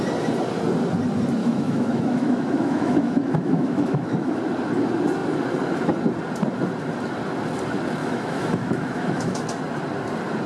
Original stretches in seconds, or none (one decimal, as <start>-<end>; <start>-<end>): 0.0-1.4; 4.4-8.0; 9.4-10.5